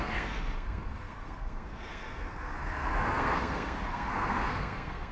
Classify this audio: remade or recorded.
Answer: remade